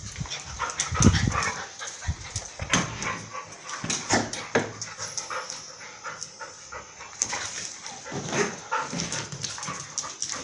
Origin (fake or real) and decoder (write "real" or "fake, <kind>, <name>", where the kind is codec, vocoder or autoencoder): real